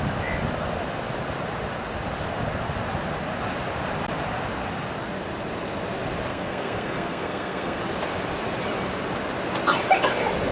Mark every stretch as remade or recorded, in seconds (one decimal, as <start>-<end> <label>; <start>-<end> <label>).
0.0-6.3 recorded; 6.3-7.8 remade; 7.8-10.5 recorded